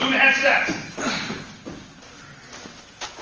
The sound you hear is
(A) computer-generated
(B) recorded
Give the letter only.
B